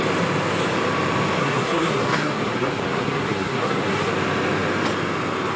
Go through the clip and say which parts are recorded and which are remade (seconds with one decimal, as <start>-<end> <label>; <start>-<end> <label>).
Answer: 0.0-1.4 recorded; 1.4-4.1 remade; 4.1-5.6 recorded